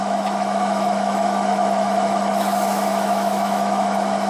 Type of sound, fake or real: fake